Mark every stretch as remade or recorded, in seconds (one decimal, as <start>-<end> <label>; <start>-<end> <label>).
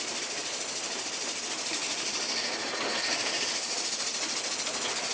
0.0-5.1 recorded